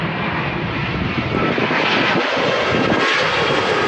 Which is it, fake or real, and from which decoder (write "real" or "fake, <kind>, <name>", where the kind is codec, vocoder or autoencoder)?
real